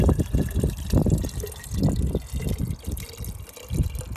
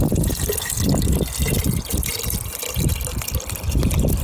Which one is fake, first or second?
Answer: second